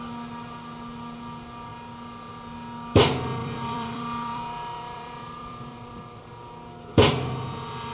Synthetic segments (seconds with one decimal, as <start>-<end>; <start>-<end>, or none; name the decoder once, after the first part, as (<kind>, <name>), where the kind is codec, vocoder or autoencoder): 3.4-6.3 (vocoder, BigVGAN v2)